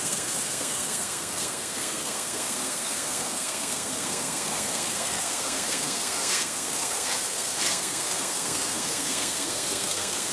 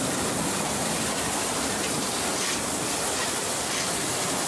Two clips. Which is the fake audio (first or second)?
first